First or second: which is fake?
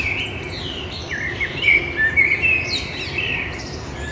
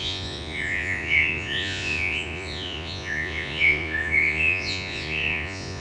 second